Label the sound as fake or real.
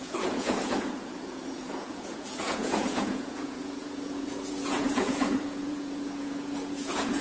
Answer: fake